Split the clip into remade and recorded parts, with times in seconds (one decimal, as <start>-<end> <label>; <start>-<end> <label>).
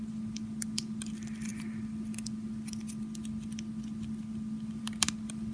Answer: 0.0-5.5 recorded